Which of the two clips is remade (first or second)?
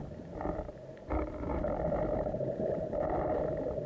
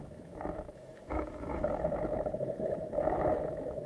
second